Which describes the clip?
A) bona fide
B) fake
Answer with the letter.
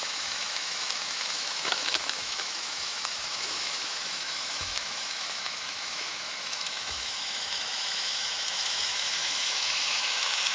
B